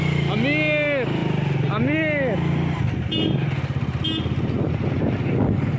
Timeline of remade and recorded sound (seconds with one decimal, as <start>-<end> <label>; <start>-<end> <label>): 0.0-5.8 recorded